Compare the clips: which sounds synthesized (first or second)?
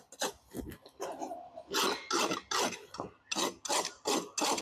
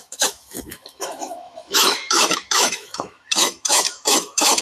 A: second